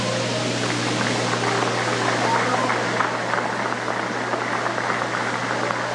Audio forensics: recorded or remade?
recorded